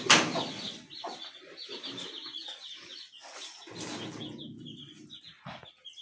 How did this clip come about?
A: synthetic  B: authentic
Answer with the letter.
B